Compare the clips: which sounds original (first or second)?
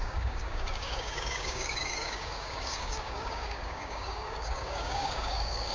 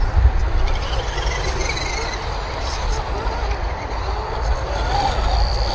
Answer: second